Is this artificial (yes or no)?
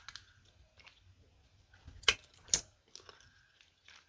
no